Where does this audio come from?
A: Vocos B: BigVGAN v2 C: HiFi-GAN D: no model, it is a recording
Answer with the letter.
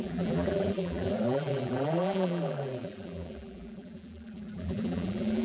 B